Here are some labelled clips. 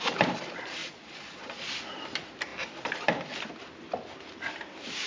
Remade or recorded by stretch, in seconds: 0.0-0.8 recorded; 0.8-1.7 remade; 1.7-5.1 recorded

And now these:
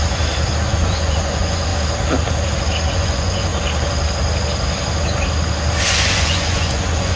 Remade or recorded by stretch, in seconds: 0.0-0.7 recorded; 0.7-1.7 remade; 1.7-2.9 recorded; 2.9-3.5 remade; 3.5-5.8 recorded; 5.8-7.2 remade

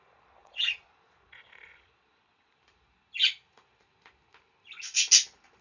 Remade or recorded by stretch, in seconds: 0.0-0.4 recorded; 0.4-2.5 remade; 2.5-5.6 recorded